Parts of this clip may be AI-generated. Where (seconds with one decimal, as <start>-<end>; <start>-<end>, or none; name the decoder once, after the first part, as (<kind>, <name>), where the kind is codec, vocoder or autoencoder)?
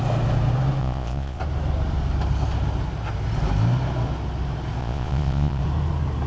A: 0.8-1.4 (vocoder, Vocos); 4.8-5.6